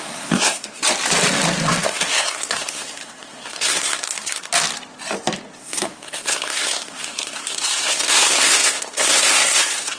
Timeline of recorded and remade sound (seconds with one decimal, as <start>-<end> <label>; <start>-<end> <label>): 0.0-0.8 remade; 0.8-1.8 recorded; 1.8-4.5 remade; 4.5-5.6 recorded; 5.6-10.0 remade